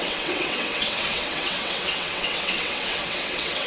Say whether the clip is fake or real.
fake